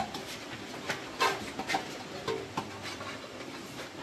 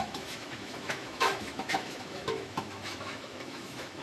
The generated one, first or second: second